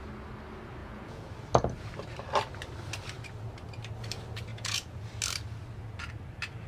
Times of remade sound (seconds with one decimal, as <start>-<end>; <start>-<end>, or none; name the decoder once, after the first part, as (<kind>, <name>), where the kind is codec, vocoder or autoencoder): 0.8-1.3 (vocoder, Vocos); 4.5-5.0